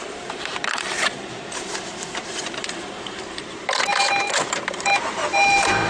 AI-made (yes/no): yes